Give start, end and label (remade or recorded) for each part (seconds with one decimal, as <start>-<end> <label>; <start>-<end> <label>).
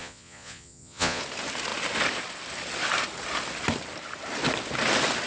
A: 0.0-1.2 remade; 1.2-5.3 recorded